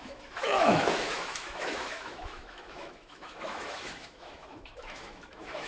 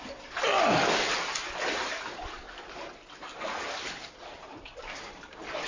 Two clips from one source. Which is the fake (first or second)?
first